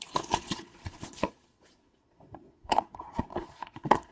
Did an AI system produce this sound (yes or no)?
yes